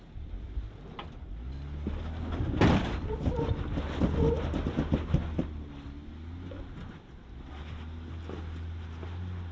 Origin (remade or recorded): recorded